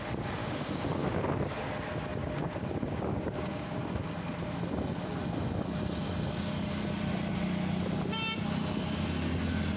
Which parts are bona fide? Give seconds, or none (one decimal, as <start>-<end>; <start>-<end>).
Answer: 0.0-0.4; 1.2-2.2; 3.8-9.8